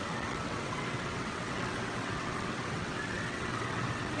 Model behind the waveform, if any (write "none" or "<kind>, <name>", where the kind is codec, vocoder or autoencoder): vocoder, WaveNeXt